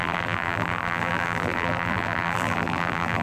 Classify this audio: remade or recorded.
remade